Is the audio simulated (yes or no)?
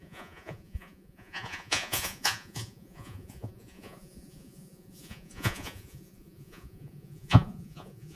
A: yes